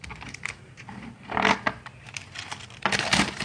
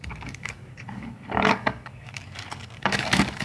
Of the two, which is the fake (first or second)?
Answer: second